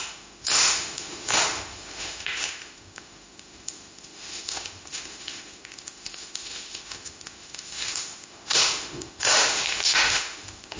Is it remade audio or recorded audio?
remade